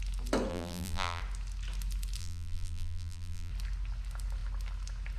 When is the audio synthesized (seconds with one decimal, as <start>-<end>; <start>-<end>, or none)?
0.5-1.2; 2.2-3.5